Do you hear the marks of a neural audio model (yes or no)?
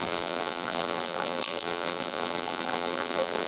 yes